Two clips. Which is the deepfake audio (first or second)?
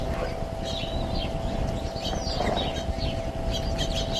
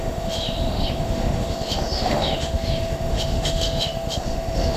second